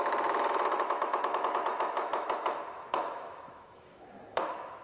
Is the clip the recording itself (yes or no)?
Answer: no